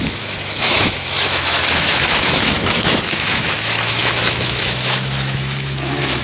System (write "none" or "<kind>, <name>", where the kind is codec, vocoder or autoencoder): autoencoder, DAC-VAE